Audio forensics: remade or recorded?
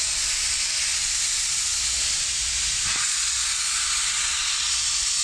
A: recorded